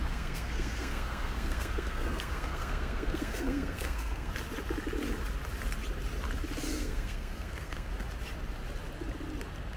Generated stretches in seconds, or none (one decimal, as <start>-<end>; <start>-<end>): 0.0-4.3; 6.7-7.9